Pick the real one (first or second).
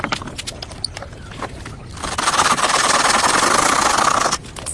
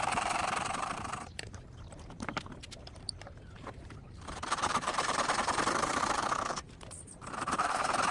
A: first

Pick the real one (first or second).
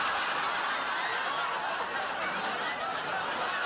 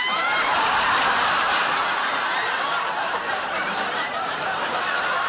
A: first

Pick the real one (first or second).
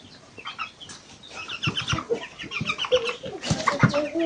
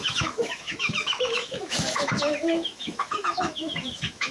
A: first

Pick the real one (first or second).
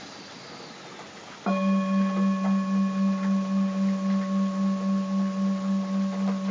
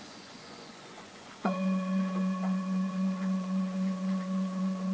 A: first